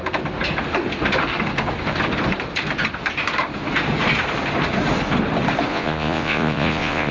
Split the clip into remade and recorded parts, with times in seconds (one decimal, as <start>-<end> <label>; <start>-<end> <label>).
0.0-5.7 recorded; 5.7-7.1 remade